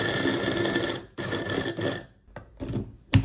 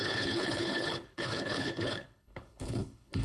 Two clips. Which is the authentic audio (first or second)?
first